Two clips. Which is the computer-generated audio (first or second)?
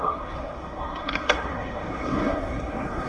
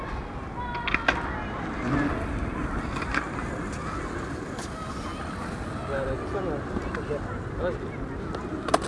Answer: first